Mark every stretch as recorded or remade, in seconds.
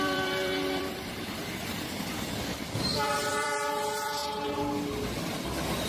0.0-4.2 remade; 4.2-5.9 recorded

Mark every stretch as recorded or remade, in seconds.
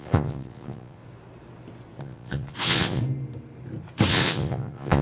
0.0-1.0 remade; 1.0-2.0 recorded; 2.0-3.0 remade; 3.0-4.1 recorded; 4.1-5.0 remade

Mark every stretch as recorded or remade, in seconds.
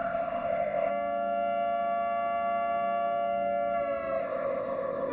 0.0-0.9 remade; 0.9-4.2 recorded; 4.2-5.1 remade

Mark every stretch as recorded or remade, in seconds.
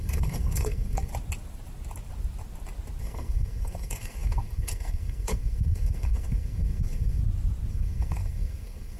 0.0-1.1 remade; 1.1-3.0 recorded; 3.0-7.2 remade; 7.2-7.7 recorded; 7.7-9.0 remade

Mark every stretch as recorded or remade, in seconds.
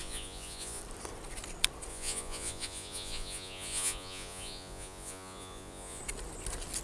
0.0-0.8 remade; 0.8-1.9 recorded; 1.9-6.0 remade; 6.0-6.8 recorded